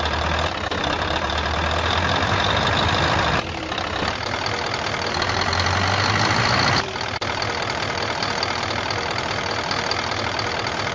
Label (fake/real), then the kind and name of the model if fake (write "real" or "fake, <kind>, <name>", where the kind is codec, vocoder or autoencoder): real